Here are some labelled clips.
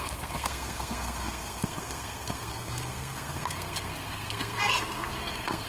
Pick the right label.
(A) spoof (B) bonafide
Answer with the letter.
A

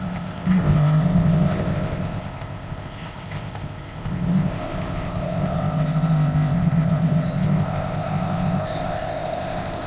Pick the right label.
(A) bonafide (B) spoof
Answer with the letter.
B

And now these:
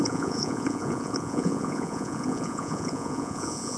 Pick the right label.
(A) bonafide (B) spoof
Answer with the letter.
B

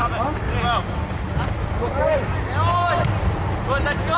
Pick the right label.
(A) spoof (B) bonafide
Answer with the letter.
B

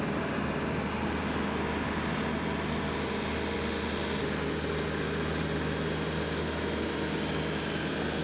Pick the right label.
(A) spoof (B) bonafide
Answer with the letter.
B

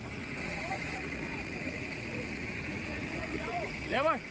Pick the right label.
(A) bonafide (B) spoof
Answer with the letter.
B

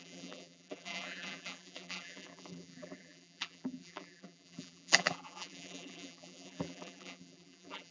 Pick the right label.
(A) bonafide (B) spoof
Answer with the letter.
B